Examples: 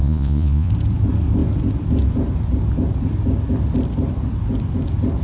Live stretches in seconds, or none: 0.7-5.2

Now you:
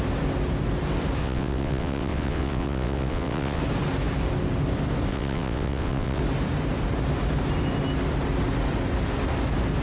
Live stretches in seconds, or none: 0.0-1.2; 3.6-5.1; 6.2-9.8

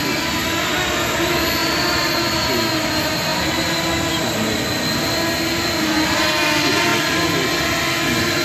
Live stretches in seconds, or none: 0.0-1.6; 2.1-6.9; 7.8-8.4

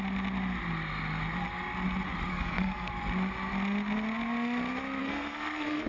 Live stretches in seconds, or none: 0.0-2.3; 2.9-5.0

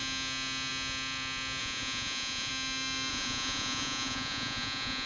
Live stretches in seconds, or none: 0.0-1.6; 2.5-3.1

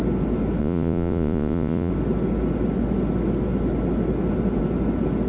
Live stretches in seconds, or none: 0.0-0.6; 1.9-5.3

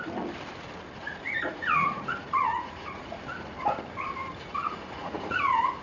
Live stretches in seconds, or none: 0.0-1.0; 3.2-4.2

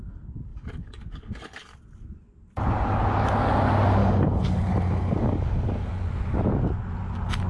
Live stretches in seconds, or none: 0.0-0.5; 1.3-4.0; 5.9-7.5